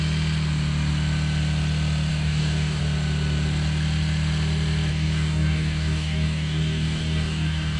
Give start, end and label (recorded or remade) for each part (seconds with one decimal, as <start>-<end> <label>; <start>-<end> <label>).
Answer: 0.0-2.1 recorded; 2.1-2.8 remade; 2.8-4.9 recorded; 4.9-7.8 remade